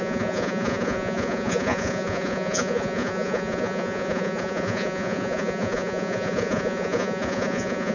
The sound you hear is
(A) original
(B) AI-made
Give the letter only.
B